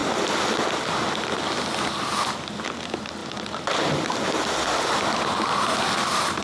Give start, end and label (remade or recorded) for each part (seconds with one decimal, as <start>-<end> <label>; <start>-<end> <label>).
0.0-6.4 recorded